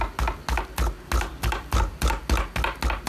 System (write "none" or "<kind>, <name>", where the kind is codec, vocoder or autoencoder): none